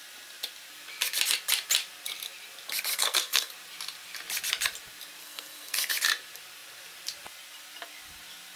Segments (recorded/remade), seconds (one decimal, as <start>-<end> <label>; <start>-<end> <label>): 0.0-2.9 recorded; 2.9-3.5 remade; 3.5-5.2 recorded; 5.2-5.9 remade; 5.9-8.6 recorded